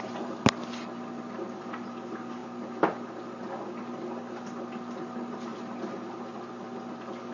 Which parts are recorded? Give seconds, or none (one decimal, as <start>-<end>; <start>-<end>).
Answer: 0.0-7.3